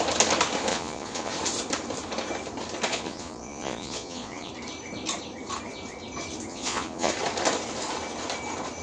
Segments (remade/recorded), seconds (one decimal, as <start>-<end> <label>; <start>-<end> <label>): 0.0-0.7 recorded; 0.7-1.3 remade; 1.3-2.9 recorded; 2.9-4.5 remade; 4.5-6.5 recorded; 6.5-7.1 remade; 7.1-8.8 recorded